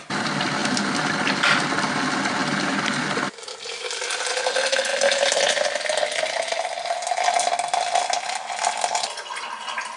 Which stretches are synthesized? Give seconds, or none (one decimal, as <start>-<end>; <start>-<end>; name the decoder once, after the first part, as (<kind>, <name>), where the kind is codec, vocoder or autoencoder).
none